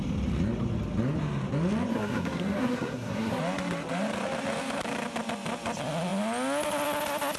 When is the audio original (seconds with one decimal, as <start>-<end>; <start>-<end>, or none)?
0.0-1.9; 3.4-7.4